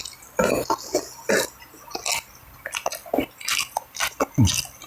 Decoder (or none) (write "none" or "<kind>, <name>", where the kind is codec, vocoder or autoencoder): none